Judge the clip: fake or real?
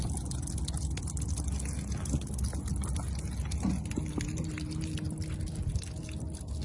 real